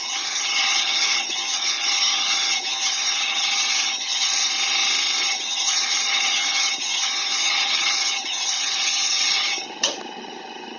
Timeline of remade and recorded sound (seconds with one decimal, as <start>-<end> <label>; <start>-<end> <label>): 0.0-4.5 remade; 4.5-5.2 recorded; 5.2-10.8 remade